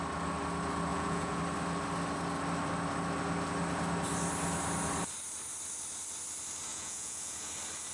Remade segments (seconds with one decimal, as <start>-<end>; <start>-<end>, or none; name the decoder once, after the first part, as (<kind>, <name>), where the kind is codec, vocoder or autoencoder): 0.9-1.4 (vocoder, Vocos); 6.7-7.5